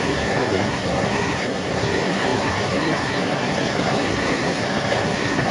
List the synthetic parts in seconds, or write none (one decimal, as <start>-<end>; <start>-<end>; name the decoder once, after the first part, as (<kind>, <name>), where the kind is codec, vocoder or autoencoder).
0.0-5.5 (codec, SNAC)